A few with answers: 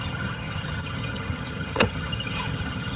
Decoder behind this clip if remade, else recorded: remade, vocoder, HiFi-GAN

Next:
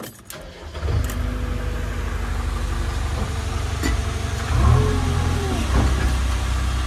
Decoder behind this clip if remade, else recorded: recorded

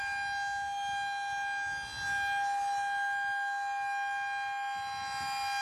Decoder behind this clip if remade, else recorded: recorded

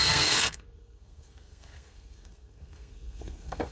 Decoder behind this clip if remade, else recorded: remade, codec, SNAC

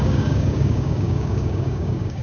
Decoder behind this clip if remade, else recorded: remade, codec, DAC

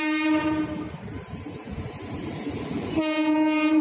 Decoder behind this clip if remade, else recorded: remade, vocoder, BigVGAN v2